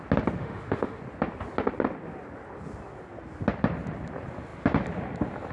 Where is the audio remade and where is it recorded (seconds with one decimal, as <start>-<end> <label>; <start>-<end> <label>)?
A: 0.0-0.4 recorded; 0.4-1.0 remade; 1.0-5.5 recorded